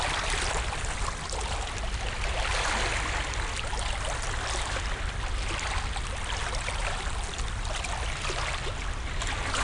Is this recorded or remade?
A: recorded